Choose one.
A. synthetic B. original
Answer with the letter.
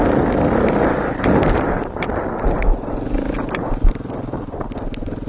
B